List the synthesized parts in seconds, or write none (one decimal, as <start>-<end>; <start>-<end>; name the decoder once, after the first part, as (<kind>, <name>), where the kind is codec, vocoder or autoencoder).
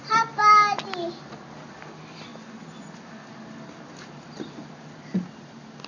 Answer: none